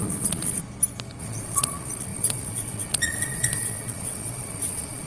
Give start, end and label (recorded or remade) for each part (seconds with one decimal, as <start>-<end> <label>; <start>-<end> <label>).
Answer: 0.0-0.6 remade; 0.6-1.2 recorded; 1.2-5.1 remade